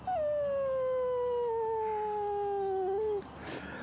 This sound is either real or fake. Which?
real